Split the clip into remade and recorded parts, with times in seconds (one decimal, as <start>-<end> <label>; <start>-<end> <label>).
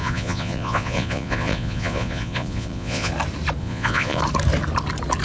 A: 0.0-3.1 remade; 3.1-3.6 recorded; 3.6-4.2 remade; 4.2-5.2 recorded